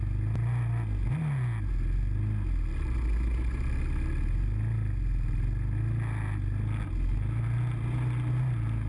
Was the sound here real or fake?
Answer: real